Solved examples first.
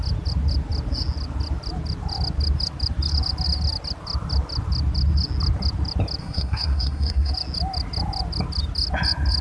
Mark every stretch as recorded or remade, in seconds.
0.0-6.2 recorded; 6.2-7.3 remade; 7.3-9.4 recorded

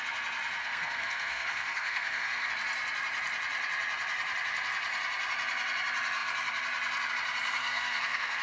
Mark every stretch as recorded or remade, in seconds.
0.0-0.6 recorded; 0.6-2.5 remade; 2.5-7.6 recorded; 7.6-8.4 remade

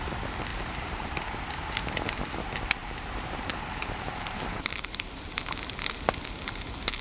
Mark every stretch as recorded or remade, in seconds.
0.0-0.5 recorded; 0.5-1.2 remade; 1.2-2.8 recorded; 2.8-5.4 remade; 5.4-7.0 recorded

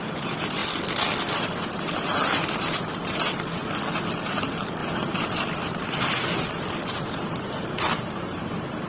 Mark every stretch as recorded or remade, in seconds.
0.0-0.6 remade; 0.6-1.3 recorded; 1.3-3.6 remade; 3.6-4.2 recorded; 4.2-8.9 remade

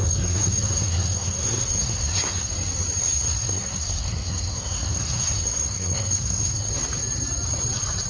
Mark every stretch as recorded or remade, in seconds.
0.0-2.5 remade; 2.5-3.0 recorded; 3.0-6.7 remade; 6.7-8.1 recorded

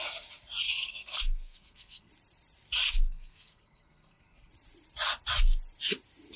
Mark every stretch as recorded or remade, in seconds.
0.0-0.8 recorded; 0.8-2.1 remade; 2.1-3.0 recorded; 3.0-4.5 remade; 4.5-6.4 recorded

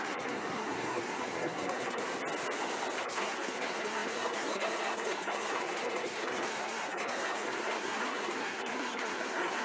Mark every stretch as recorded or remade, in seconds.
0.0-2.0 remade; 2.0-3.0 recorded; 3.0-9.6 remade